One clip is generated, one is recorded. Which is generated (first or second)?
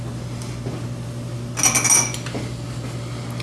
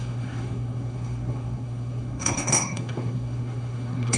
second